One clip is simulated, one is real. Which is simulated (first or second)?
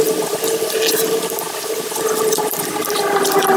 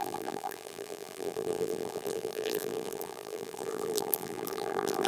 second